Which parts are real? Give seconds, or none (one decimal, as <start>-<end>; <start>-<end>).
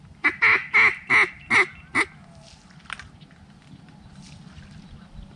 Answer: 0.0-5.4